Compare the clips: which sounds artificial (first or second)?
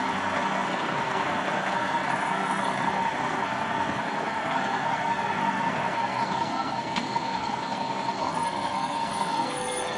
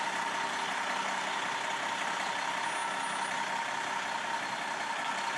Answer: first